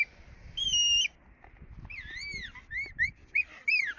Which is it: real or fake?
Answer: real